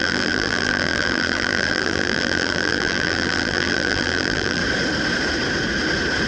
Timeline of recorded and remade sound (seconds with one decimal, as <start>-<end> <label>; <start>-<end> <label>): 0.0-4.6 remade; 4.6-6.3 recorded